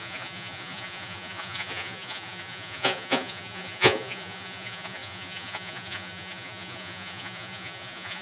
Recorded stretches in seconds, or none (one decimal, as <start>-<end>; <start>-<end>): none